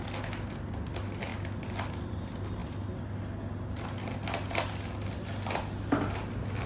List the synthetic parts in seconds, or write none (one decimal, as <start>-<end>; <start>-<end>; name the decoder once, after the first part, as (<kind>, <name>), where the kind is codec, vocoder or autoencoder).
none